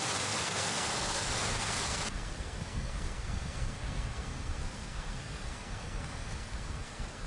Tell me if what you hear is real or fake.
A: fake